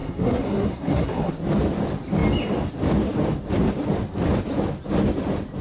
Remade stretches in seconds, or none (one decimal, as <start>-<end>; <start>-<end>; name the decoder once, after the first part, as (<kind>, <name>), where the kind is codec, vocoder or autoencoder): 0.0-1.3 (codec, SNAC)